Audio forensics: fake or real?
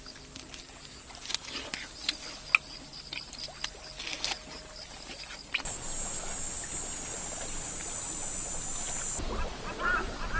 real